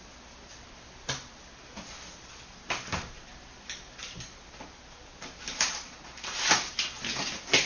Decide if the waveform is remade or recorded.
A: recorded